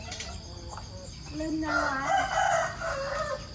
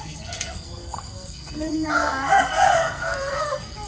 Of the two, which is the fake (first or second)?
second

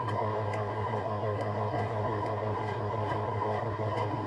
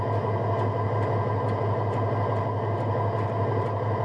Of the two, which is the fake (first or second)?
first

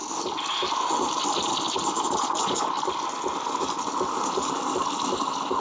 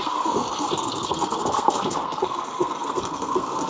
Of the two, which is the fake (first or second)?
second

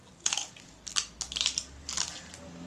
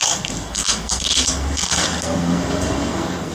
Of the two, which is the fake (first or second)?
second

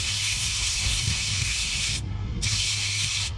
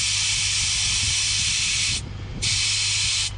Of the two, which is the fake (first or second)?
first